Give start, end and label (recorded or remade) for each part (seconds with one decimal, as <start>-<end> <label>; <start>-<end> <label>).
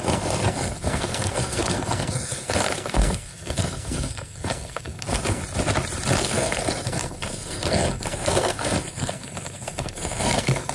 0.0-5.4 remade; 5.4-6.2 recorded; 6.2-10.7 remade